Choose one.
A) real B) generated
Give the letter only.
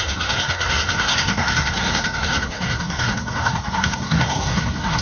B